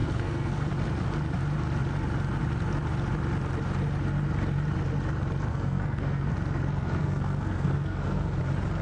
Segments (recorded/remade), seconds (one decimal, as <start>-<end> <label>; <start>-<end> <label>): 0.0-0.7 remade; 0.7-5.5 recorded; 5.5-6.3 remade; 6.3-6.7 recorded; 6.7-8.4 remade; 8.4-8.8 recorded